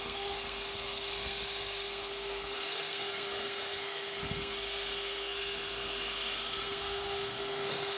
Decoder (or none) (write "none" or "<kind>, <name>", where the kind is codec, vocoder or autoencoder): codec, SNAC